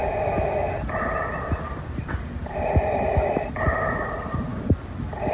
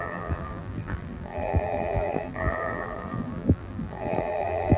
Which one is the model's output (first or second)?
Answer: second